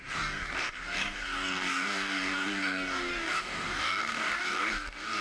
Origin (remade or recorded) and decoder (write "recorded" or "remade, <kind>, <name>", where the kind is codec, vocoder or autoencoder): remade, codec, DAC